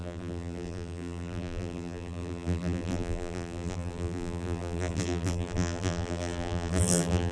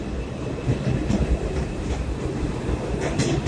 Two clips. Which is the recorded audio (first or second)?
second